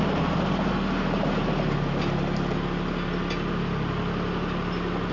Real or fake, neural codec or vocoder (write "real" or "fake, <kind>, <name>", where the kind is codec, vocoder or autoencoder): real